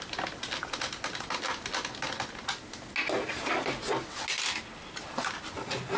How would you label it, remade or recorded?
recorded